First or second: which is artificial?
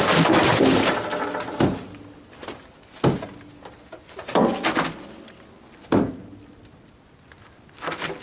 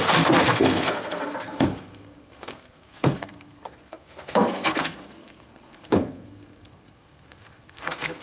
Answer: second